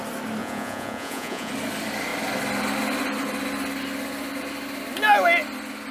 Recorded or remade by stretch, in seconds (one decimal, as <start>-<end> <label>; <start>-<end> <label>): 0.0-0.4 recorded; 0.4-1.5 remade; 1.5-5.9 recorded

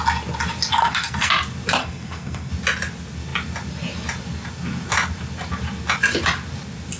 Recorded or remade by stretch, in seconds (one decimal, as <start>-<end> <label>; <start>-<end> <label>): 0.0-0.8 recorded; 0.8-1.3 remade; 1.3-1.8 recorded; 1.8-2.5 remade; 2.5-7.0 recorded

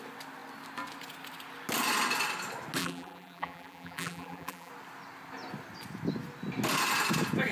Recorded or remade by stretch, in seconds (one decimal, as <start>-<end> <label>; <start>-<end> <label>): 0.0-2.8 recorded; 2.8-4.7 remade; 4.7-7.5 recorded

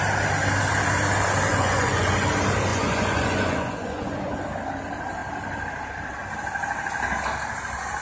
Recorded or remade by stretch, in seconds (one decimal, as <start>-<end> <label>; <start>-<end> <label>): 0.0-1.5 recorded; 1.5-2.3 remade; 2.3-2.7 recorded; 2.7-4.4 remade; 4.4-8.0 recorded